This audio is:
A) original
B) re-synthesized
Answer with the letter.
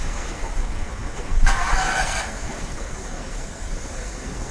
B